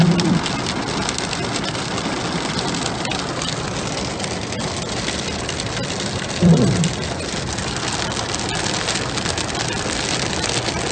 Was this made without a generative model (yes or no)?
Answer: yes